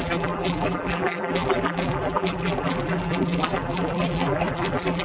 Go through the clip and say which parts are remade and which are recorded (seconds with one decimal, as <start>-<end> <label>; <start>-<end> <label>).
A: 0.0-5.0 remade